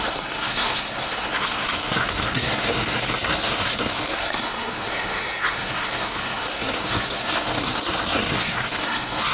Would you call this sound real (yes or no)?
no